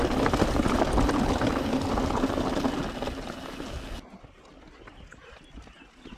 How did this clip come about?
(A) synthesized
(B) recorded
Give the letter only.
B